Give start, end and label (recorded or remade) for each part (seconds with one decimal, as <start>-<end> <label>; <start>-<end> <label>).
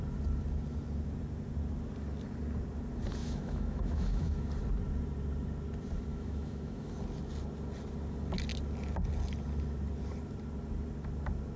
0.0-3.2 recorded; 3.2-4.5 remade; 4.5-6.1 recorded; 6.1-6.9 remade; 6.9-11.6 recorded